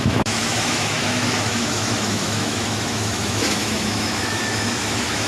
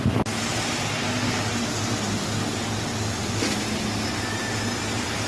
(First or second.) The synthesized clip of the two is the first